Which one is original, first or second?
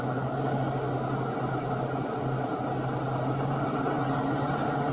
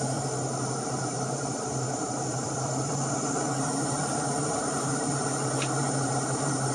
first